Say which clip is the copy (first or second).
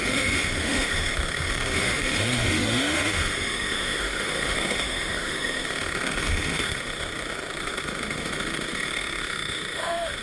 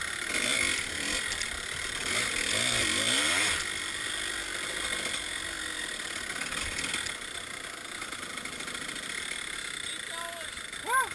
first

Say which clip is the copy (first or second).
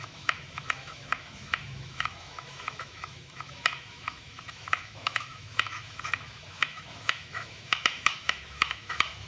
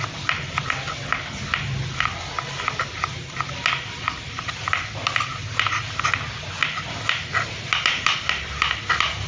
first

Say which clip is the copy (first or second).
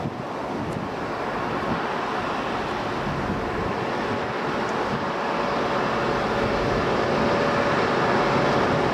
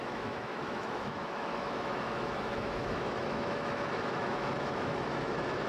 second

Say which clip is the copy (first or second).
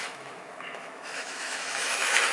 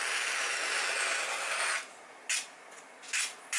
first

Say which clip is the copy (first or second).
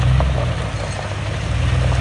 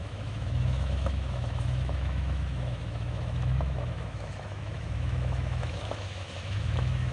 second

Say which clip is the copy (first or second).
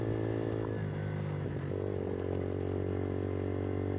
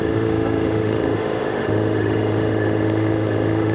second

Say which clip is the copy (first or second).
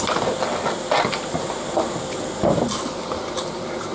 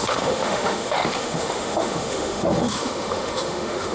second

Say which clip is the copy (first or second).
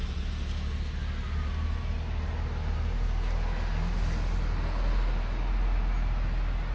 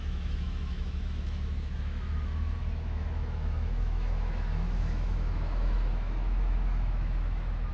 second